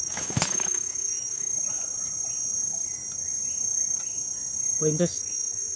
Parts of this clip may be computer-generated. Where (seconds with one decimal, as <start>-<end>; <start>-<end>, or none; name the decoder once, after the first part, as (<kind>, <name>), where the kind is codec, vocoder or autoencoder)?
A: 0.0-1.5 (autoencoder, DAC-VAE); 5.0-5.8